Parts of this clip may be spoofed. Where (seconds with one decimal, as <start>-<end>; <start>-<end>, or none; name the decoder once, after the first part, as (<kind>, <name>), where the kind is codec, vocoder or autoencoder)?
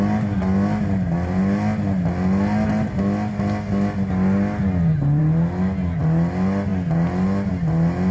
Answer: none